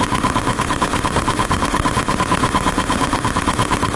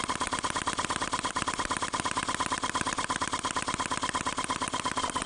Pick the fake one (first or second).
first